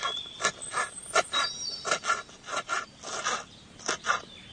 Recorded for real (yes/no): yes